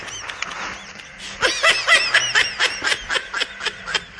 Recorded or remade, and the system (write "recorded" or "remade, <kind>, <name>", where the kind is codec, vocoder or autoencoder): recorded